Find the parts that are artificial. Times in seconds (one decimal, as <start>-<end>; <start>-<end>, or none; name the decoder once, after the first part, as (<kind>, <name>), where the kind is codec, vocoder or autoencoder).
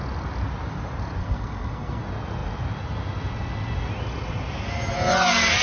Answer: 1.2-2.0 (codec, SNAC)